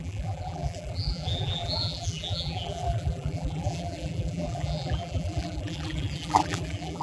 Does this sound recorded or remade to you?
remade